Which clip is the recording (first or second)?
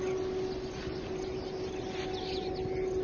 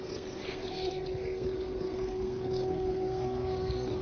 first